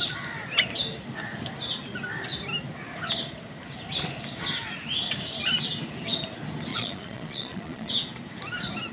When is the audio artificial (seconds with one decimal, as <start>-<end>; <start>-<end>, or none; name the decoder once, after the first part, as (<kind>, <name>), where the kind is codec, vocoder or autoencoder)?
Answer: 6.7-7.9 (vocoder, Vocos)